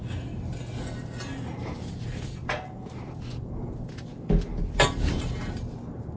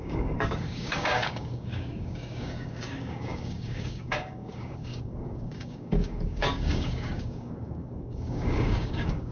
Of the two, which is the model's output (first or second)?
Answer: second